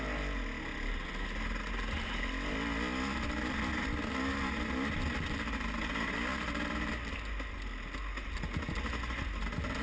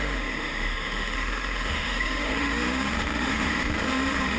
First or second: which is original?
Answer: first